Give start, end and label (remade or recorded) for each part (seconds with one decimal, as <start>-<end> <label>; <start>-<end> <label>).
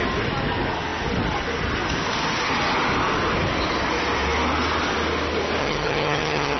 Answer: 0.0-5.6 recorded; 5.6-6.6 remade